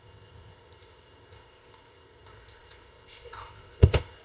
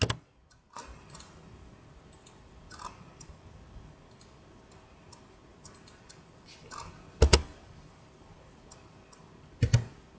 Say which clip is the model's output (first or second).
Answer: first